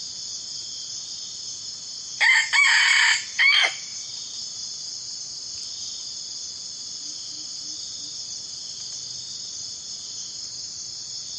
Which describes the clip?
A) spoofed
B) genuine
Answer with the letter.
B